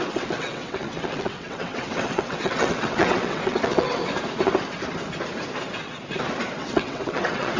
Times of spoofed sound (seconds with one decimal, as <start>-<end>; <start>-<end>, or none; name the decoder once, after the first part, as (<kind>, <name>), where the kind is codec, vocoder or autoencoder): 0.0-4.0 (vocoder, WaveNeXt); 6.6-7.6